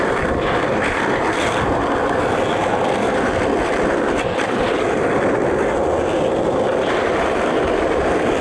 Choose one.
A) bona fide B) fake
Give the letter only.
A